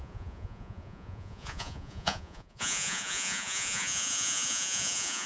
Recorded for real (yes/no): no